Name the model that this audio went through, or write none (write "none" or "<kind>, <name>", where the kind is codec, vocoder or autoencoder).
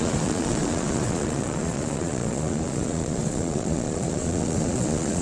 vocoder, Vocos